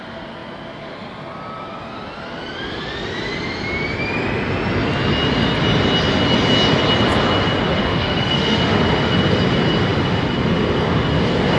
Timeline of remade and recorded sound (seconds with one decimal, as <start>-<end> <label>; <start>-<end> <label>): 0.0-7.8 recorded; 7.8-8.8 remade; 8.8-11.6 recorded

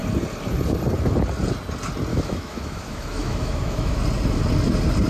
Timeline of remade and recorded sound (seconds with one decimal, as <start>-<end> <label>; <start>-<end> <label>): 0.0-2.1 recorded; 2.1-4.0 remade; 4.0-5.1 recorded

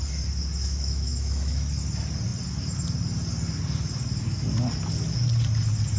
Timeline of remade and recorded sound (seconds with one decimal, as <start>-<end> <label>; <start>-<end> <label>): 0.0-0.6 recorded; 0.6-1.7 remade; 1.7-6.0 recorded

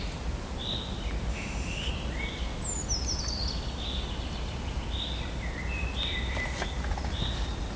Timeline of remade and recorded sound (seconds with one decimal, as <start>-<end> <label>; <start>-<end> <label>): 0.0-1.3 recorded; 1.3-1.9 remade; 1.9-7.8 recorded

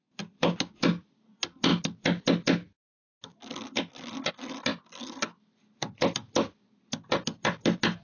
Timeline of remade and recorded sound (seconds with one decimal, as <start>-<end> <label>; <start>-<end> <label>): 0.0-8.0 recorded

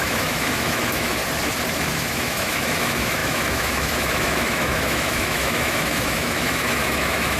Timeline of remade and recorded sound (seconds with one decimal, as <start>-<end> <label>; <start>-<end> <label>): 0.0-1.2 remade; 1.2-1.8 recorded; 1.8-7.4 remade

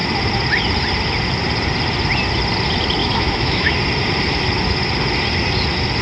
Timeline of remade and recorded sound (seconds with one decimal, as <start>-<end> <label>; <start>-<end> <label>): 0.0-3.0 recorded; 3.0-3.7 remade; 3.7-6.0 recorded